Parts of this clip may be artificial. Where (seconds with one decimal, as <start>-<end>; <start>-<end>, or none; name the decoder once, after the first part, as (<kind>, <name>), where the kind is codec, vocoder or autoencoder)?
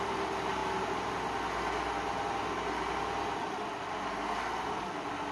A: none